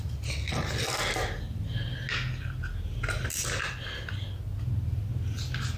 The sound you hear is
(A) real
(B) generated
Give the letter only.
A